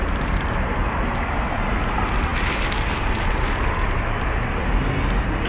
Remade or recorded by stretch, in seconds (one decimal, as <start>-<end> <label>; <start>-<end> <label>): 0.0-5.5 recorded